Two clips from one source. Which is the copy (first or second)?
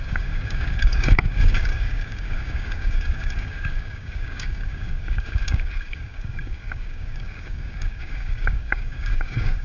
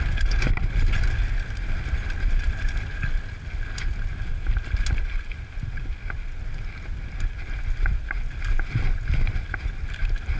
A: first